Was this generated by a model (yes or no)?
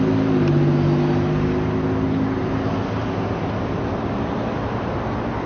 no